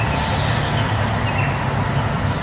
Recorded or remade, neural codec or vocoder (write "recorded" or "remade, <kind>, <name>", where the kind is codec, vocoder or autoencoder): recorded